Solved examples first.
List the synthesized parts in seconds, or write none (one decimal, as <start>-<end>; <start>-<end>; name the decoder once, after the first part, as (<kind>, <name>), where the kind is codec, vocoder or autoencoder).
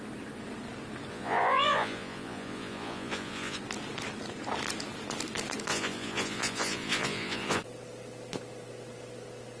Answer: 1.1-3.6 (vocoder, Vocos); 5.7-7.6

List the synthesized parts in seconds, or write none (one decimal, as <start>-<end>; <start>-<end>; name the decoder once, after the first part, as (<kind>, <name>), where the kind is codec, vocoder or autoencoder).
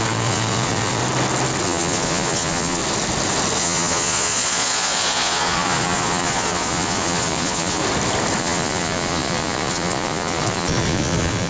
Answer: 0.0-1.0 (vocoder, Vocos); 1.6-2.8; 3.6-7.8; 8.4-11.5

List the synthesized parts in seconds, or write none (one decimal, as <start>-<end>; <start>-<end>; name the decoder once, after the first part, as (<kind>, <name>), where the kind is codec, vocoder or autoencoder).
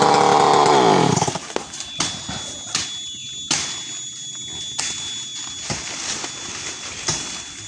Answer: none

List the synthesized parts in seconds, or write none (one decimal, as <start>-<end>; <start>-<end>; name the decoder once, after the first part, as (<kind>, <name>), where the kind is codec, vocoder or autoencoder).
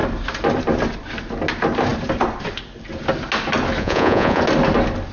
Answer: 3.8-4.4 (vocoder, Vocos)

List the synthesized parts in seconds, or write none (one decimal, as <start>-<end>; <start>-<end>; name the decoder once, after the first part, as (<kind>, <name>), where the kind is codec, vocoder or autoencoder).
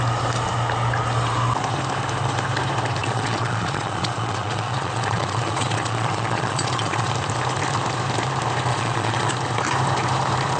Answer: 3.0-7.1 (vocoder, Vocos); 8.7-9.3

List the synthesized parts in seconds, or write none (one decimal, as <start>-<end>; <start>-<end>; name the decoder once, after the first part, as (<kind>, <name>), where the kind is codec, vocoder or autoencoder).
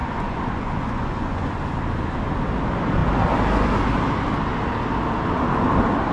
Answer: 0.0-1.6 (vocoder, Vocos)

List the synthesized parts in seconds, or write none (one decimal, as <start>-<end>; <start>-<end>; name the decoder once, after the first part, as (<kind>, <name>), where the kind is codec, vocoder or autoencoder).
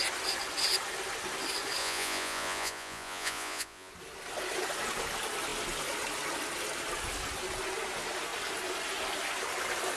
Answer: 1.8-3.9 (vocoder, Vocos)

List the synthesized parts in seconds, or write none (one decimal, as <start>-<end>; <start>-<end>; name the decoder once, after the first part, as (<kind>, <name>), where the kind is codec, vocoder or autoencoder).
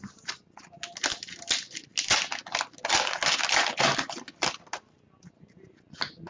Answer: none